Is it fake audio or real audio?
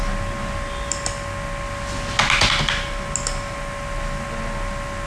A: real